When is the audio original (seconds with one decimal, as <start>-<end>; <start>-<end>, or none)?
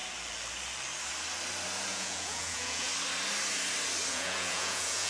0.0-1.9; 2.9-4.1